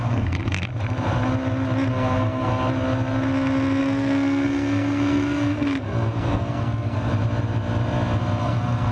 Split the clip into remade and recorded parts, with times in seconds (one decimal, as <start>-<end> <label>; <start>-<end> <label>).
0.0-0.7 remade; 0.7-1.9 recorded; 1.9-2.5 remade; 2.5-3.8 recorded; 3.8-7.1 remade; 7.1-8.4 recorded; 8.4-8.9 remade

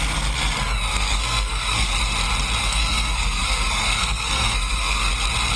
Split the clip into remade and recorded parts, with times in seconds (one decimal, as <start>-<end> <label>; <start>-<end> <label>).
0.0-0.9 recorded; 0.9-1.9 remade; 1.9-2.6 recorded; 2.6-5.1 remade; 5.1-5.6 recorded